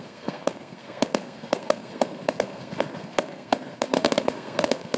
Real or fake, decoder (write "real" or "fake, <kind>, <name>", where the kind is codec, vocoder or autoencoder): fake, codec, SNAC